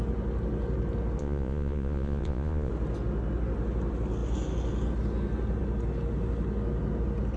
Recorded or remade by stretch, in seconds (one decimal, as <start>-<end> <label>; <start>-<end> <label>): 0.0-1.2 recorded; 1.2-2.7 remade; 2.7-7.4 recorded